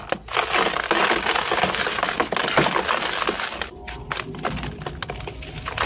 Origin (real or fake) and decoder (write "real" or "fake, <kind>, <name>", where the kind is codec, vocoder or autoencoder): real